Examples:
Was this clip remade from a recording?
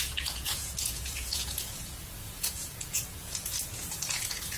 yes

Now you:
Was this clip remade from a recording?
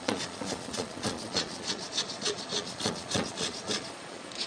yes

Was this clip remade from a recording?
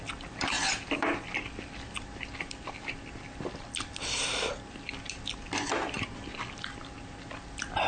no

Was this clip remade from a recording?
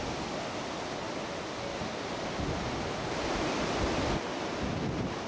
no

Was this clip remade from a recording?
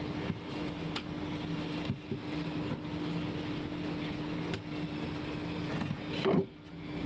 no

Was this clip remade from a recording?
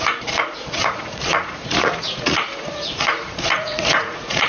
yes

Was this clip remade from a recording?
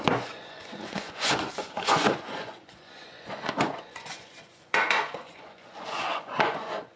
yes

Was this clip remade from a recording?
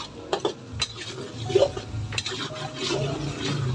no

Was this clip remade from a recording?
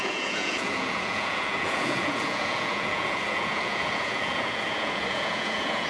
yes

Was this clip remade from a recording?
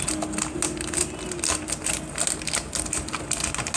no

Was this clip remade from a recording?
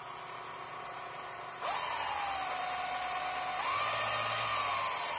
no